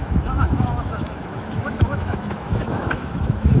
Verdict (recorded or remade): remade